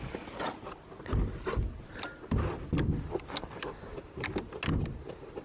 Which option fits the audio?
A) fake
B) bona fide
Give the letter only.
B